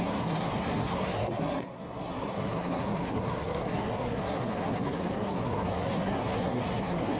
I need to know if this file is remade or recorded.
remade